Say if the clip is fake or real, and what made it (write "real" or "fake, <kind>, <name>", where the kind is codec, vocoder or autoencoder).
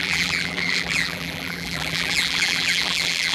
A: fake, vocoder, BigVGAN v2